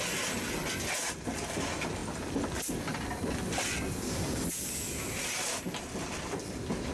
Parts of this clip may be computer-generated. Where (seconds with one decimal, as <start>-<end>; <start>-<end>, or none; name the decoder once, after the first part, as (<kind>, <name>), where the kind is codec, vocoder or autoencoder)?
none